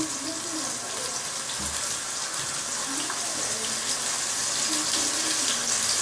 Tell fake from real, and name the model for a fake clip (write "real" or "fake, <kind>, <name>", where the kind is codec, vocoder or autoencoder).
real